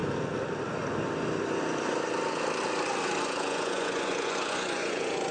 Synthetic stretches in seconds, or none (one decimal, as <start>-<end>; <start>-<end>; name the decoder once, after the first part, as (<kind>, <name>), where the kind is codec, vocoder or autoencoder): 3.2-5.3 (vocoder, Vocos)